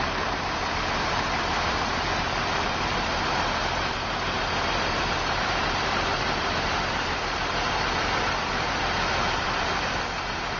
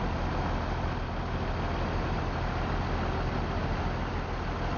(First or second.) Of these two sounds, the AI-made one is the first